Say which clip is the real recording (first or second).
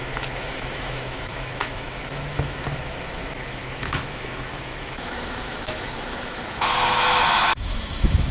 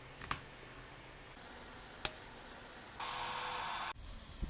second